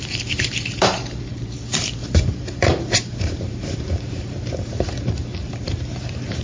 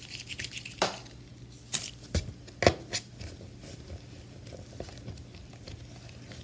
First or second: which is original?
second